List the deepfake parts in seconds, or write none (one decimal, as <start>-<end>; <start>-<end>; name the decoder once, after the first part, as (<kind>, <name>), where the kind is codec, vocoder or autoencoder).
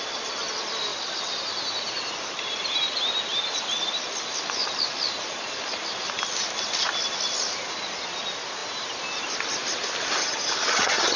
10.2-11.2 (vocoder, HiFi-GAN)